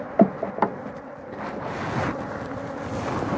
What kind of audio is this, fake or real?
real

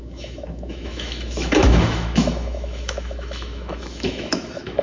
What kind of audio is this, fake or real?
fake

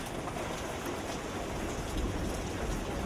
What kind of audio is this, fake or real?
real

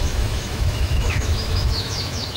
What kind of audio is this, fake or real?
fake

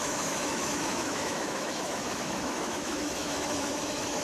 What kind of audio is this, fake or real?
fake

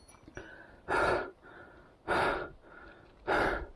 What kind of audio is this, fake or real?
real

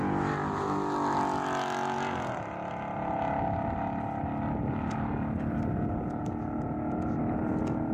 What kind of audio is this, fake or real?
real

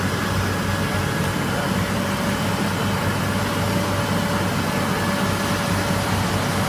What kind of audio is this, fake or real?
real